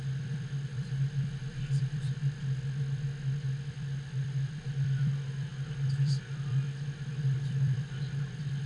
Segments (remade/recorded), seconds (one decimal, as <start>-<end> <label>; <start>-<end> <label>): 0.0-2.2 remade; 2.2-3.7 recorded; 3.7-8.7 remade

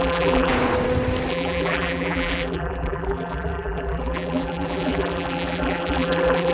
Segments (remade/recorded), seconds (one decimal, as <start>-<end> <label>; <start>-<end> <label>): 0.0-0.5 remade; 0.5-1.3 recorded; 1.3-6.5 remade

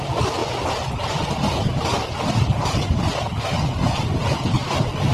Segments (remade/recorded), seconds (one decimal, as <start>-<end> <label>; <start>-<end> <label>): 0.0-2.6 recorded; 2.6-3.1 remade; 3.1-5.1 recorded

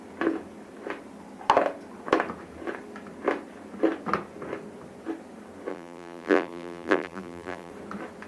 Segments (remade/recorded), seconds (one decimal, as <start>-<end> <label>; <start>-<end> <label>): 0.0-5.7 recorded; 5.7-7.7 remade; 7.7-8.3 recorded

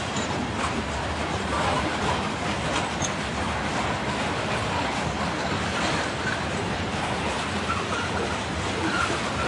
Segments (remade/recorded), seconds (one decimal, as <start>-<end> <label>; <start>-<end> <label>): 0.0-1.5 remade; 1.5-6.5 recorded; 6.5-9.5 remade

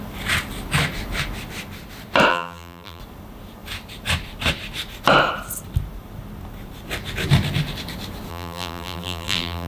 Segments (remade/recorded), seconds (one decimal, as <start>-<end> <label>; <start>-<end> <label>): 0.0-2.3 recorded; 2.3-3.0 remade; 3.0-8.3 recorded; 8.3-9.7 remade